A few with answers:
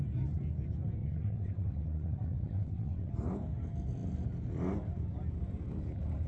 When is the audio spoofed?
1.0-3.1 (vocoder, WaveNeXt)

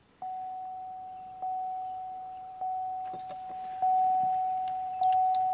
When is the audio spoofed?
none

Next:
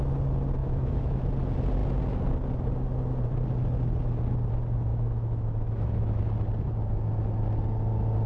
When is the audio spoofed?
0.6-1.2 (autoencoder, DAC-VAE); 4.9-6.2

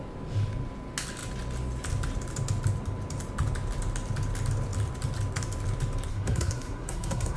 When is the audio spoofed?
6.1-7.4 (codec, SNAC)